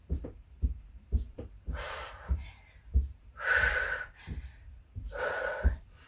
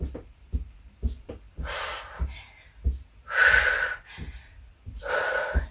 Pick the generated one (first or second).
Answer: first